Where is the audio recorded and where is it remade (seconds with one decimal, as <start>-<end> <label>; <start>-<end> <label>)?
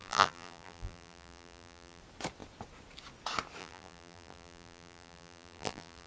0.0-2.0 remade; 2.0-3.6 recorded; 3.6-6.1 remade